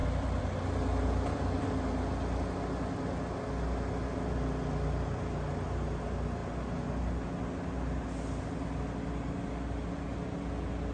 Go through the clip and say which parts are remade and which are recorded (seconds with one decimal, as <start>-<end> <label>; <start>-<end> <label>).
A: 0.0-2.0 remade; 2.0-10.9 recorded